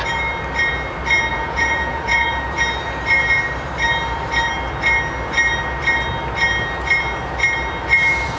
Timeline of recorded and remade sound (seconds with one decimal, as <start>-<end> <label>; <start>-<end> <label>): 0.0-1.3 recorded; 1.3-2.6 remade; 2.6-8.4 recorded